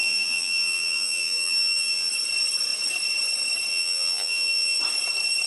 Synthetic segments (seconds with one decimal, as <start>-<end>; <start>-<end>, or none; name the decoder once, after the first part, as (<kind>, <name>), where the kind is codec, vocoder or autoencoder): 0.0-2.1 (vocoder, BigVGAN v2); 3.7-4.8